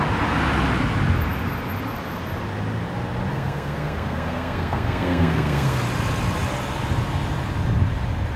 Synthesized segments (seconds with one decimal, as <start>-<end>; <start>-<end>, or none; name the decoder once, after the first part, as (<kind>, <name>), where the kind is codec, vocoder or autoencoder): 3.3-5.8 (codec, SNAC)